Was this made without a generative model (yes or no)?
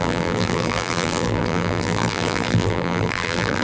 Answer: no